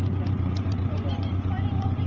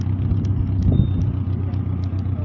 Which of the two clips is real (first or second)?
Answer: second